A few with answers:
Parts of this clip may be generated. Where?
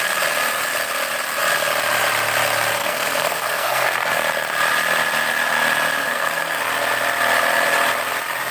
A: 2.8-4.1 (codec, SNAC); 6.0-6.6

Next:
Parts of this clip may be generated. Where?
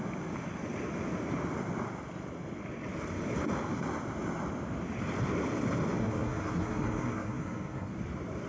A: 6.0-7.9 (codec, SNAC)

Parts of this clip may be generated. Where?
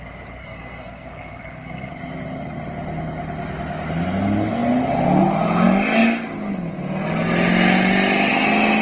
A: 0.4-1.9 (codec, SNAC)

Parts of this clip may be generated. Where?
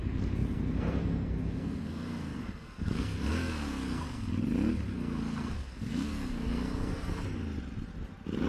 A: 0.0-4.3 (codec, SNAC); 4.9-7.1